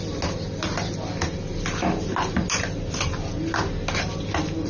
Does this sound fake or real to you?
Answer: real